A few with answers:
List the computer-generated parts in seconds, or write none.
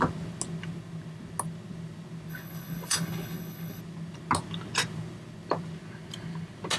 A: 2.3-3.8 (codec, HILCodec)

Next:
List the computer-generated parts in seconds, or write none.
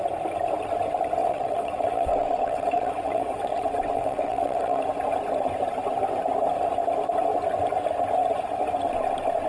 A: 1.2-4.8 (vocoder, WaveNeXt)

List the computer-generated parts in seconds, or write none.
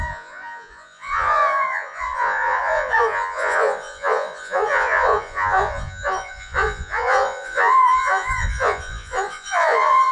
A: 0.0-10.1 (vocoder, Vocos)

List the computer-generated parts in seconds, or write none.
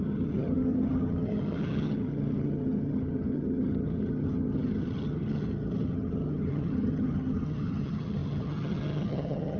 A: 0.0-9.6 (vocoder, HiFi-GAN)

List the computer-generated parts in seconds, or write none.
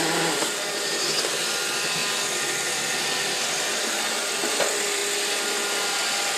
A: 0.0-2.0 (vocoder, BigVGAN v2); 3.9-5.0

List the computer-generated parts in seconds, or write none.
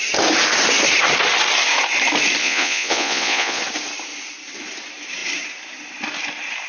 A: 2.4-3.6 (vocoder, Vocos)